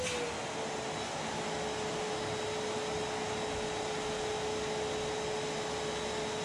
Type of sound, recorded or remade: recorded